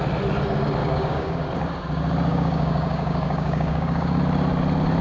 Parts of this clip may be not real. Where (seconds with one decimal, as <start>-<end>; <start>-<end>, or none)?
0.8-1.4; 2.3-4.2

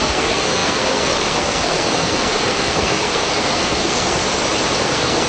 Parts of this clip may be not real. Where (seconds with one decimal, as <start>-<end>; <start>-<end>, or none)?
0.0-4.2; 4.8-5.3